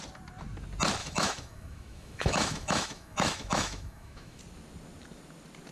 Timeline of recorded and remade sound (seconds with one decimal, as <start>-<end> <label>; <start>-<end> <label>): 0.0-1.0 recorded; 1.0-4.4 remade; 4.4-5.7 recorded